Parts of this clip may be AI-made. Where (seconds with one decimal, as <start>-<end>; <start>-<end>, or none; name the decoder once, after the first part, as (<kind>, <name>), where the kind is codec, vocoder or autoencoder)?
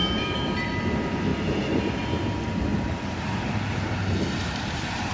0.0-0.8 (vocoder, BigVGAN v2); 1.3-2.0; 2.7-5.1